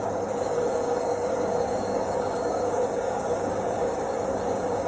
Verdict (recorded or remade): remade